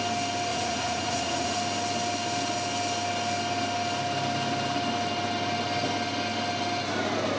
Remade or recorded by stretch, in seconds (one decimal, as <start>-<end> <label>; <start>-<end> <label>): 0.0-0.5 recorded; 0.5-1.6 remade; 1.6-7.4 recorded